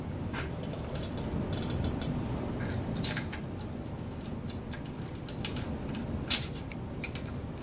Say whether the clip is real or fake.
real